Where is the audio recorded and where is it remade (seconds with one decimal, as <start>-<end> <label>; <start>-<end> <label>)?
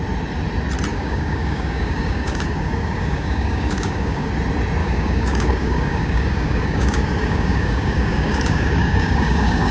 0.0-0.9 recorded; 0.9-4.3 remade; 4.3-4.8 recorded; 4.8-9.7 remade